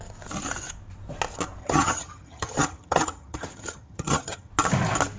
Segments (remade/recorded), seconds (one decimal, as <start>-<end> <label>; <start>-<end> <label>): 0.0-1.6 recorded; 1.6-4.5 remade; 4.5-5.2 recorded